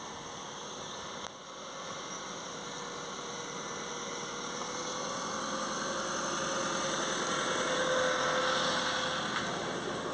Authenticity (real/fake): real